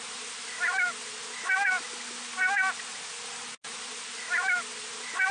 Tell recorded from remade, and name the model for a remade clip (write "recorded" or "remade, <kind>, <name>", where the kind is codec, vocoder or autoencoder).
recorded